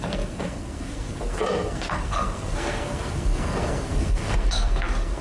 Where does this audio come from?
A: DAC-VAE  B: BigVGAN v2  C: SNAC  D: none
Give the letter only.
C